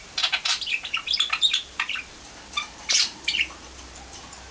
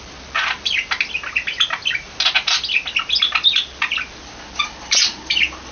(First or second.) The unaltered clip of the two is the second